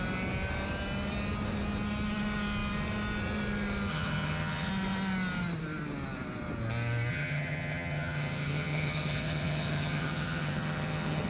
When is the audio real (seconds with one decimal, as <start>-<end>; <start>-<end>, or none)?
0.0-3.9; 4.7-7.1